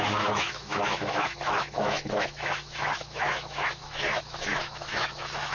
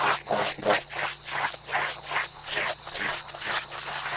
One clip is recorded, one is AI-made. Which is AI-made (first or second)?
first